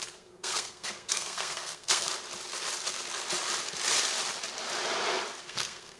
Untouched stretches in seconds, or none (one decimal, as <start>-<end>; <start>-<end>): 2.1-5.4